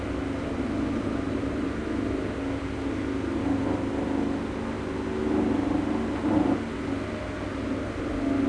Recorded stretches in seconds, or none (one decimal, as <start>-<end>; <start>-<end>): 0.0-8.5